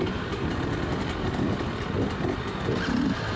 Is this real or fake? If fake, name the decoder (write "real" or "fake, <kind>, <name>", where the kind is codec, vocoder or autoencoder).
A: real